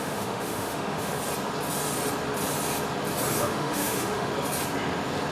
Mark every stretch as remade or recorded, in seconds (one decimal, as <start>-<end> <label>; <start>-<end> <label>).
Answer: 0.0-1.1 remade; 1.1-3.4 recorded; 3.4-4.3 remade; 4.3-5.3 recorded